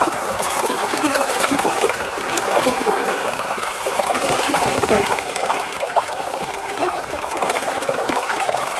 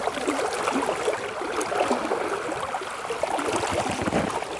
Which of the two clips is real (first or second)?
second